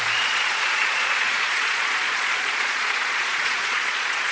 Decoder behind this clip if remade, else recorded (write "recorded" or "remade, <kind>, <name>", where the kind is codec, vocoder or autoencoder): remade, vocoder, Vocos